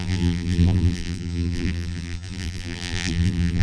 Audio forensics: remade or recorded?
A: remade